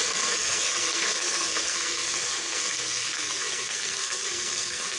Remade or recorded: remade